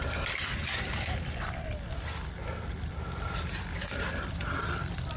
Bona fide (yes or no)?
no